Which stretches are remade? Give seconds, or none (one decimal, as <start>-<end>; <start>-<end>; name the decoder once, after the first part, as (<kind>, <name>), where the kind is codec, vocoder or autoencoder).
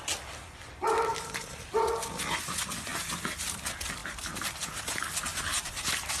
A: 1.1-1.6 (vocoder, BigVGAN v2); 4.0-4.8; 5.3-6.2